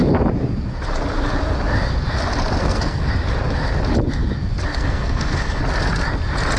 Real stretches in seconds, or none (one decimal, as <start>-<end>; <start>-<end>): 0.0-2.6; 3.1-4.7; 5.6-6.6